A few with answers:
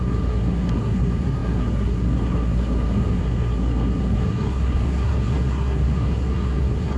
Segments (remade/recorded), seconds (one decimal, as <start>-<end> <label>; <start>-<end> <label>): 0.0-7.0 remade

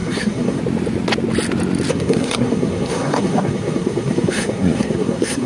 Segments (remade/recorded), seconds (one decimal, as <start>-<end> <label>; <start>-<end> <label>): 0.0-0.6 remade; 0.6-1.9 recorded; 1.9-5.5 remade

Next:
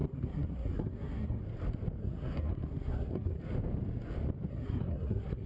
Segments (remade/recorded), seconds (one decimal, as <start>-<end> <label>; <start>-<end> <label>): 0.0-1.4 remade; 1.4-2.0 recorded; 2.0-3.4 remade; 3.4-4.5 recorded; 4.5-5.5 remade